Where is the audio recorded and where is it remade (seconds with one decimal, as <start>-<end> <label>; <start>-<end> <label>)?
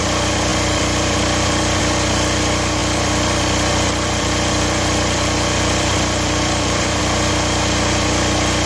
0.0-0.5 recorded; 0.5-1.8 remade; 1.8-2.8 recorded; 2.8-7.0 remade; 7.0-8.7 recorded